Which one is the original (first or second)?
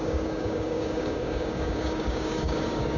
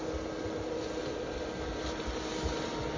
second